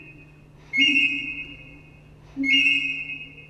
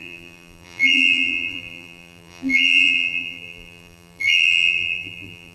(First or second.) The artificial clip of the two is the second